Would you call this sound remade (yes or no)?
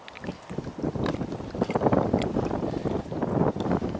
no